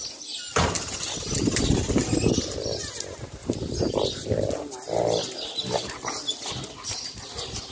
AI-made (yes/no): no